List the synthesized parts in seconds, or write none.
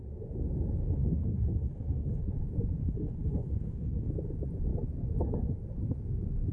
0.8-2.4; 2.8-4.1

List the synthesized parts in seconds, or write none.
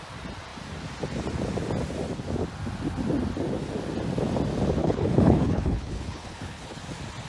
4.8-6.8